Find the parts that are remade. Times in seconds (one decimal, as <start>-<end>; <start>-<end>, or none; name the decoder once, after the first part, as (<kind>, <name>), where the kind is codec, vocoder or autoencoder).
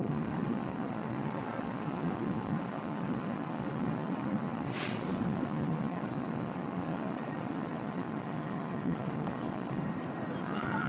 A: 0.0-9.8 (vocoder, Vocos); 10.4-10.9